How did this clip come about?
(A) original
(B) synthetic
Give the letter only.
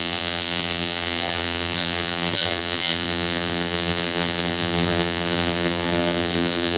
B